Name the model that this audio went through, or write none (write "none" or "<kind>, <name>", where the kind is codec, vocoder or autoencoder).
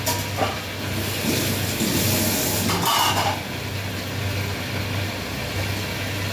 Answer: none